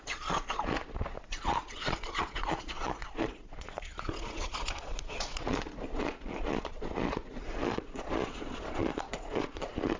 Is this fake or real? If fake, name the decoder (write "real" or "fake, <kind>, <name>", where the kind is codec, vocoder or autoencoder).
fake, vocoder, Vocos